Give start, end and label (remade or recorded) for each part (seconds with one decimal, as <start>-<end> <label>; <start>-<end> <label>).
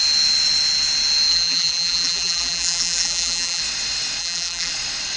0.0-1.3 recorded; 1.3-3.6 remade; 3.6-4.2 recorded; 4.2-4.7 remade; 4.7-5.2 recorded